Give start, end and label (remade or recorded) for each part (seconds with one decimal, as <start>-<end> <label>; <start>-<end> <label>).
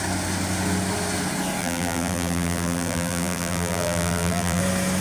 0.0-1.6 recorded; 1.6-4.6 remade; 4.6-5.0 recorded